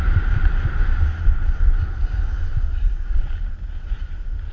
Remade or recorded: recorded